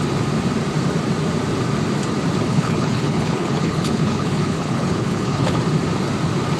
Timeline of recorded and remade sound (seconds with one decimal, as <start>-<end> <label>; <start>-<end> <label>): 0.0-2.5 recorded; 2.5-5.6 remade; 5.6-6.6 recorded